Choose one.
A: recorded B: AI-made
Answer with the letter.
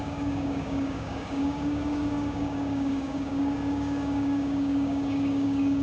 B